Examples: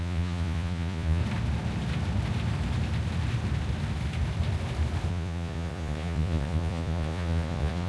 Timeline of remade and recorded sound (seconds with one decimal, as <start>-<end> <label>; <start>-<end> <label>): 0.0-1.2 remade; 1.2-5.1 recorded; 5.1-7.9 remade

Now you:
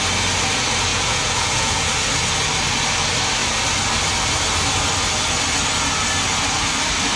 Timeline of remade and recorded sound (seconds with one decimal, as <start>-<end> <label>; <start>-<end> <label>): 0.0-0.9 recorded; 0.9-1.9 remade; 1.9-7.2 recorded

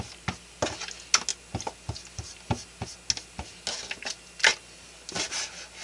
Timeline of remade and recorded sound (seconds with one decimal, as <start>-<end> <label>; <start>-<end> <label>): 0.0-5.8 recorded

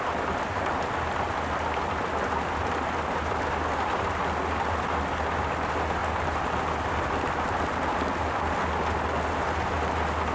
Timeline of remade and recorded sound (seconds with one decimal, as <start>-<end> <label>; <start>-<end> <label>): 0.0-10.3 recorded